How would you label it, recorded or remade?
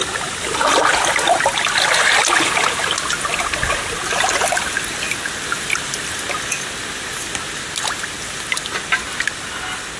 recorded